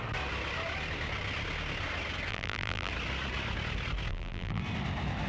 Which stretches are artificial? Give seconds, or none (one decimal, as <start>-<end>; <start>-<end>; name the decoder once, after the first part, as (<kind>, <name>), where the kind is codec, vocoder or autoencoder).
2.3-2.9 (vocoder, BigVGAN v2); 4.1-4.6